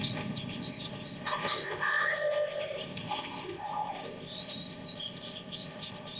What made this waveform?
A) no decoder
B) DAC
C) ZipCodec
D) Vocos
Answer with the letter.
C